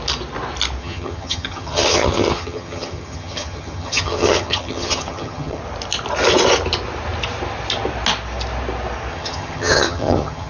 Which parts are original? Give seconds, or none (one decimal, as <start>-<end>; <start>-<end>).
0.0-0.8; 5.6-9.1